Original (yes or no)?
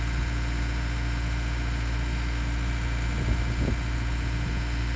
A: yes